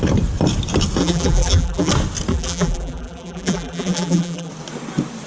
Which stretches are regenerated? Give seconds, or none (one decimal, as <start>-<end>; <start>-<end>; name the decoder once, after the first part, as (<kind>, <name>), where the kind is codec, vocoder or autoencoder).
1.0-1.9 (vocoder, BigVGAN v2); 2.3-4.5